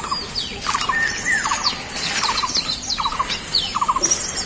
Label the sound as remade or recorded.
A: recorded